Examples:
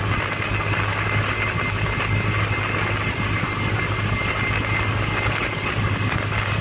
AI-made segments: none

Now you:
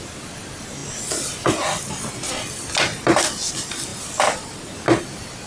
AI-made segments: none

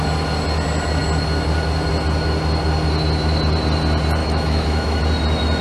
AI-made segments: 4.2-5.0